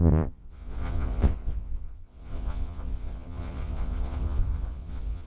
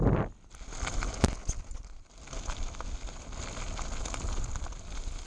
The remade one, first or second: first